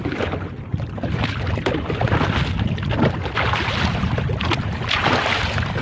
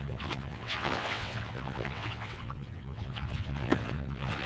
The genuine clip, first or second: first